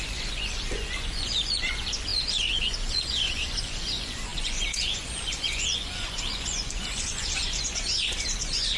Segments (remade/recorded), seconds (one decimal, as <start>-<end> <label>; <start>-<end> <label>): 0.0-8.8 remade